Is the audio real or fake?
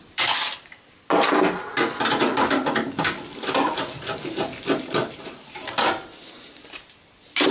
real